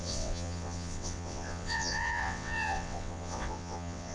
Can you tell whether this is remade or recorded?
remade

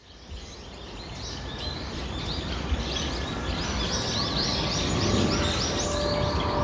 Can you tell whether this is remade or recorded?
recorded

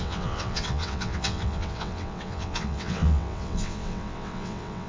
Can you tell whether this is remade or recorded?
remade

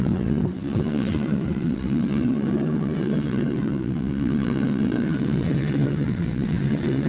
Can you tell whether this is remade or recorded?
remade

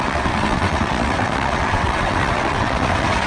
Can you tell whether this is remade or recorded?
remade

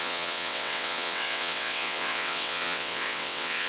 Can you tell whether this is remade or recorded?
remade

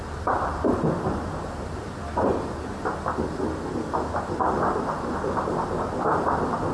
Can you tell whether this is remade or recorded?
recorded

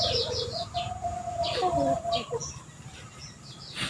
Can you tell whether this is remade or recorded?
recorded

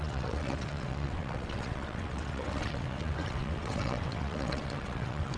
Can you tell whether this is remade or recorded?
remade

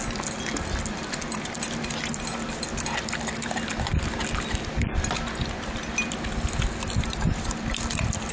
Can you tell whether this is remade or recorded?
recorded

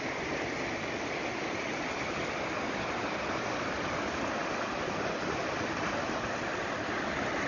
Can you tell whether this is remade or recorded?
recorded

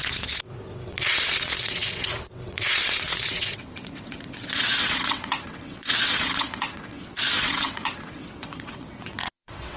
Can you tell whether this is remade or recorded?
remade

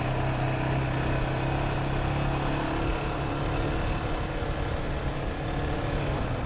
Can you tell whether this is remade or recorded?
recorded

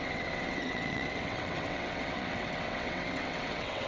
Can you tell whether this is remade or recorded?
remade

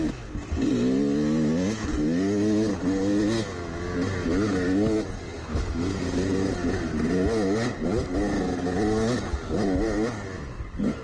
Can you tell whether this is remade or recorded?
recorded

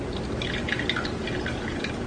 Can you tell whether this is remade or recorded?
recorded